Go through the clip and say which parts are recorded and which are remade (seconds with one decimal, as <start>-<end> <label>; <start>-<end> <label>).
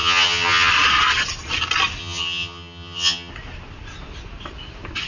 0.0-0.7 remade; 0.7-2.0 recorded; 2.0-3.3 remade; 3.3-5.1 recorded